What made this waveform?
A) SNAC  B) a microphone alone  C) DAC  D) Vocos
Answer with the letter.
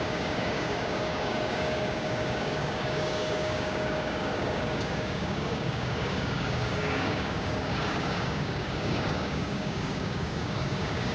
C